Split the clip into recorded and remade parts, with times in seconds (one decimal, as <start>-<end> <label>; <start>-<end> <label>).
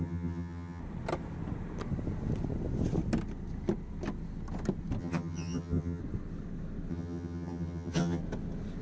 0.0-0.8 remade; 0.8-5.0 recorded; 5.0-6.0 remade; 6.0-6.9 recorded; 6.9-8.2 remade; 8.2-8.8 recorded